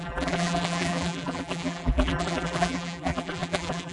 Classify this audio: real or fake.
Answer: fake